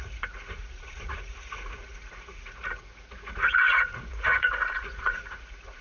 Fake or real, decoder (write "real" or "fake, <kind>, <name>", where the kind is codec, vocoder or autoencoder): fake, vocoder, Vocos